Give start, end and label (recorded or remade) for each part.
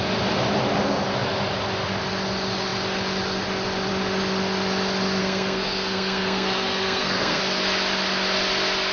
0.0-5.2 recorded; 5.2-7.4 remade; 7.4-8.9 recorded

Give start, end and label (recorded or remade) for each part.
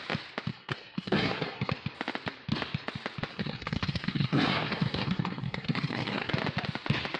0.0-0.5 recorded; 0.5-1.7 remade; 1.7-3.3 recorded; 3.3-6.3 remade; 6.3-7.2 recorded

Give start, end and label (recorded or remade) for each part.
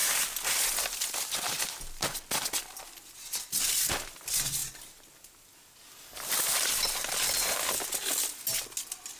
0.0-9.2 recorded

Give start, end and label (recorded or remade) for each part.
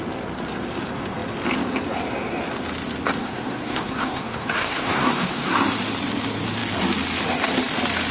0.0-3.2 recorded; 3.2-5.5 remade; 5.5-8.1 recorded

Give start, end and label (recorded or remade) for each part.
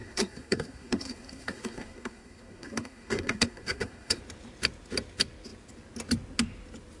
0.0-4.2 remade; 4.2-7.0 recorded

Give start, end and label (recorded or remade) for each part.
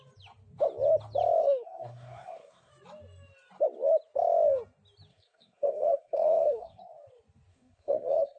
0.0-1.4 recorded; 1.4-2.7 remade; 2.7-5.1 recorded; 5.1-6.8 remade; 6.8-7.5 recorded; 7.5-8.4 remade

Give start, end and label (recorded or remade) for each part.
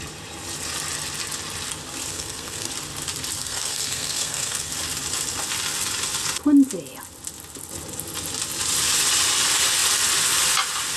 0.0-2.1 recorded; 2.1-2.7 remade; 2.7-3.4 recorded; 3.4-4.7 remade; 4.7-11.0 recorded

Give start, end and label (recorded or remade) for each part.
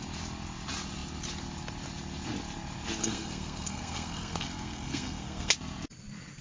0.0-3.0 recorded; 3.0-5.5 remade; 5.5-6.4 recorded